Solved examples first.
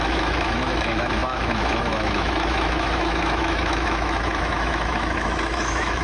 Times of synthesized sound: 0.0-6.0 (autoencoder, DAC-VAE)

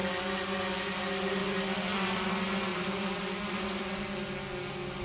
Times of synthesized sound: 1.4-2.3 (vocoder, BigVGAN v2); 2.7-4.0